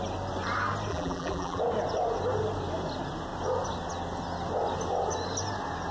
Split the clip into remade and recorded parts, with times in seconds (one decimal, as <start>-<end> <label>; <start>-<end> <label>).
0.0-0.9 recorded; 0.9-1.6 remade; 1.6-5.9 recorded